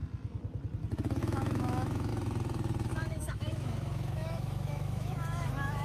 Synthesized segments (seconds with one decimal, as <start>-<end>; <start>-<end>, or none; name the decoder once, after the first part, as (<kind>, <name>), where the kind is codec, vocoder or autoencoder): 1.2-2.1 (autoencoder, DAC-VAE); 2.9-5.8